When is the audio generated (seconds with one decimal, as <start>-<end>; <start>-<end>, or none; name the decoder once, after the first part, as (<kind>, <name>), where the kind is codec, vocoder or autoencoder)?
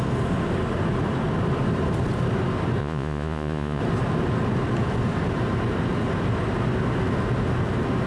2.8-3.8 (vocoder, Vocos)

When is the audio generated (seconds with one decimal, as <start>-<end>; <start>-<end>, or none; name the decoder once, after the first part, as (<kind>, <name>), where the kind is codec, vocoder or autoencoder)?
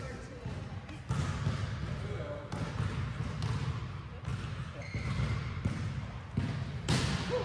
none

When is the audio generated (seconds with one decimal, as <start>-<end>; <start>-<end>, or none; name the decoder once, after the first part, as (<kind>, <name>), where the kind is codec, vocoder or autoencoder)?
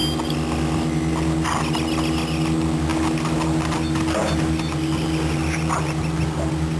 none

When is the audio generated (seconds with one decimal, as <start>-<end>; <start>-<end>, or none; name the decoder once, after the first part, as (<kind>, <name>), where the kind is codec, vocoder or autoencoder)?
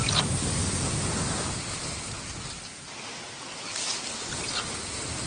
none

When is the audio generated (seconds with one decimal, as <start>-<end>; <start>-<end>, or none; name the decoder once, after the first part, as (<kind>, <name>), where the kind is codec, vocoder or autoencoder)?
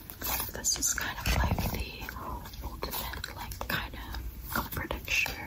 none